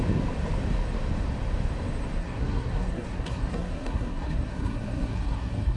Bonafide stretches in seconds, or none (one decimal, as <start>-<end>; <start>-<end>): 0.0-2.2